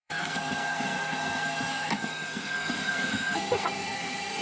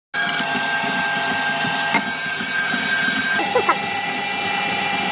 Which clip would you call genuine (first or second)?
second